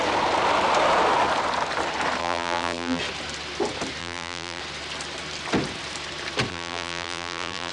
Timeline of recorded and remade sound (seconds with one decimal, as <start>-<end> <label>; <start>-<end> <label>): 0.0-2.2 recorded; 2.2-3.0 remade; 3.0-4.0 recorded; 4.0-4.6 remade; 4.6-6.5 recorded; 6.5-7.7 remade

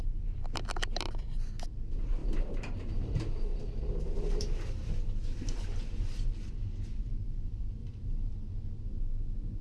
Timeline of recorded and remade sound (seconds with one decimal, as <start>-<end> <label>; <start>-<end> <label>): 0.0-2.2 recorded; 2.2-4.7 remade; 4.7-7.8 recorded; 7.8-8.3 remade; 8.3-9.6 recorded

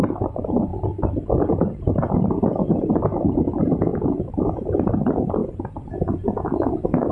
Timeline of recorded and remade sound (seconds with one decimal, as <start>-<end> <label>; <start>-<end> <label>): 0.0-0.7 remade; 0.7-1.4 recorded; 1.4-7.1 remade

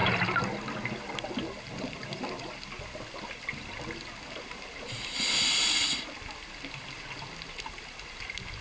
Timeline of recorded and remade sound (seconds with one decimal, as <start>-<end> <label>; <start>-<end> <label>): 0.0-8.6 recorded

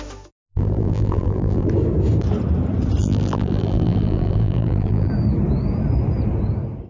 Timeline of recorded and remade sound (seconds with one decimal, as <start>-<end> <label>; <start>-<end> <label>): 0.0-0.5 recorded; 0.5-1.7 remade; 1.7-3.0 recorded; 3.0-5.1 remade; 5.1-6.9 recorded

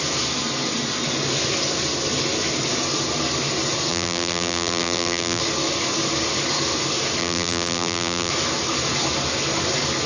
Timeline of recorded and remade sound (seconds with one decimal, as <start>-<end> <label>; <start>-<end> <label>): 0.0-3.9 recorded; 3.9-5.4 remade; 5.4-7.2 recorded; 7.2-8.3 remade; 8.3-10.1 recorded

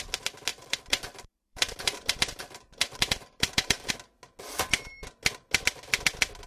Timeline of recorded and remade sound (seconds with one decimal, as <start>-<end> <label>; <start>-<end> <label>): 0.0-0.5 recorded; 0.5-3.9 remade; 3.9-6.5 recorded

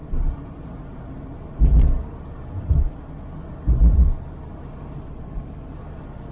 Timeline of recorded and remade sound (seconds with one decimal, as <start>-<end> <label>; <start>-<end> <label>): 0.0-1.0 remade; 1.0-6.3 recorded